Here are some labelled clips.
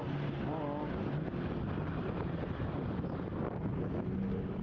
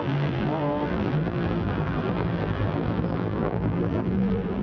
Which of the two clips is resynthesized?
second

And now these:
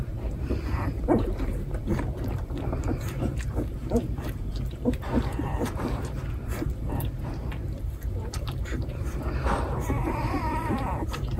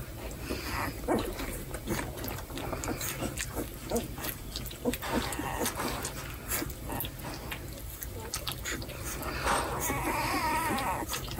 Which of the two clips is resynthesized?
first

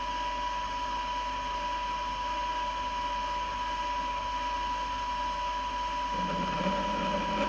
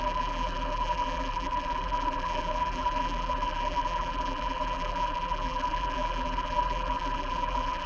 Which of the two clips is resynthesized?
second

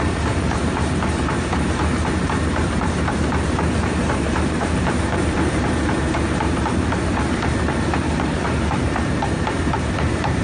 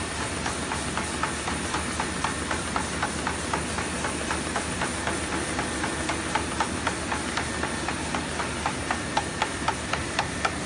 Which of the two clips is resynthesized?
first